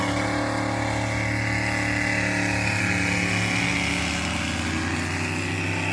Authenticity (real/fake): real